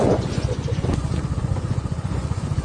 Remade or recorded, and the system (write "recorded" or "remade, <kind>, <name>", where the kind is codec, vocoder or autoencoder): remade, vocoder, Vocos